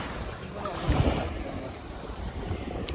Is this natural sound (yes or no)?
no